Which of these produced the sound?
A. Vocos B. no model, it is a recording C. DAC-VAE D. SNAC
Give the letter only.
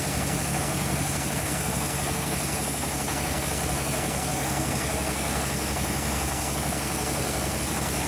D